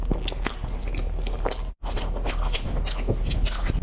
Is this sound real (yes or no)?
yes